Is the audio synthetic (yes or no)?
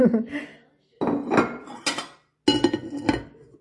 no